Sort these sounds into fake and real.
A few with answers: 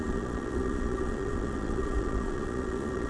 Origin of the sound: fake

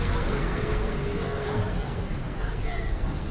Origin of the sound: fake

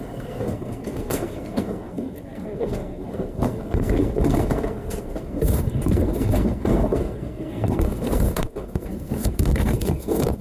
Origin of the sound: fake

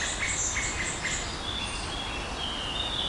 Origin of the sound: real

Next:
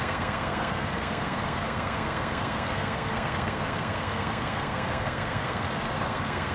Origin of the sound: fake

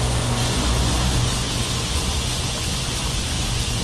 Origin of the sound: fake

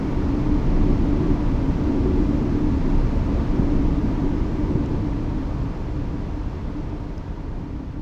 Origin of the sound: real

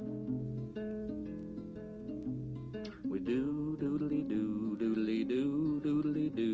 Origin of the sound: real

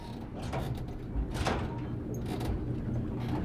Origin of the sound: real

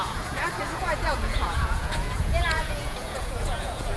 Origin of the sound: fake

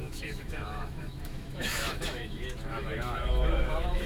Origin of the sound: fake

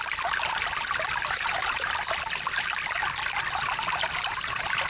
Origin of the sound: real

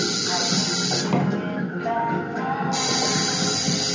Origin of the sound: real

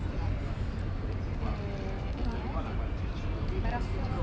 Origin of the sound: real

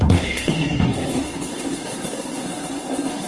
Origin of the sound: fake